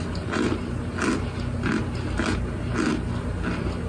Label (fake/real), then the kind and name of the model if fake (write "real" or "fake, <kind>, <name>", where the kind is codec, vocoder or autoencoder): real